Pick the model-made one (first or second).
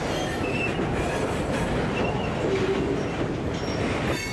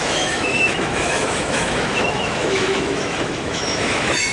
second